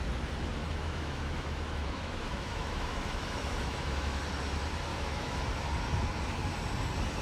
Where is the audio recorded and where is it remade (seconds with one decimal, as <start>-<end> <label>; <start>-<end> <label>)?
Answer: 0.0-0.6 recorded; 0.6-4.2 remade; 4.2-4.9 recorded; 4.9-5.4 remade; 5.4-7.2 recorded